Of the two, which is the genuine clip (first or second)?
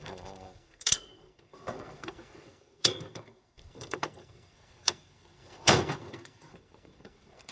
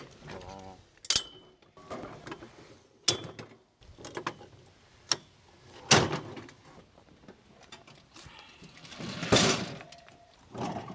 second